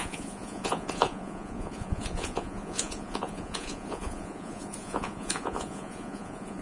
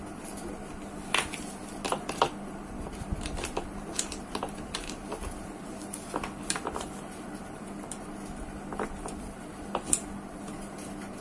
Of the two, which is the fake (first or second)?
first